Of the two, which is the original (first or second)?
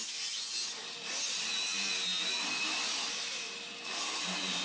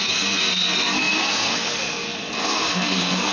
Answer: first